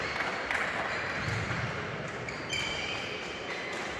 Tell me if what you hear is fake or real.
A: fake